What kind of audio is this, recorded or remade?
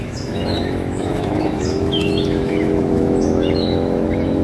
remade